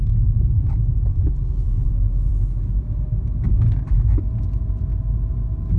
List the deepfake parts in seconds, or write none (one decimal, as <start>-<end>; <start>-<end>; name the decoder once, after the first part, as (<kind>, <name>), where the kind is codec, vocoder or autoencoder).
1.1-1.9 (vocoder, BigVGAN v2)